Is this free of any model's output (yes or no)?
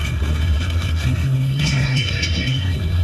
no